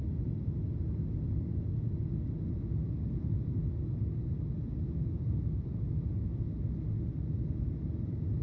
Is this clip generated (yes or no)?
no